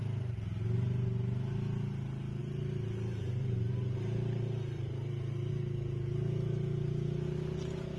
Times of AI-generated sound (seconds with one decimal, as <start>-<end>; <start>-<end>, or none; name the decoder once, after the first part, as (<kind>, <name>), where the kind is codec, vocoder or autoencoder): 2.4-5.5 (vocoder, BigVGAN v2)